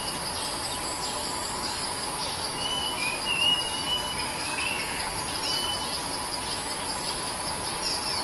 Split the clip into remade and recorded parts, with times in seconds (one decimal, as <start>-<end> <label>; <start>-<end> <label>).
0.0-1.2 recorded; 1.2-5.2 remade; 5.2-8.2 recorded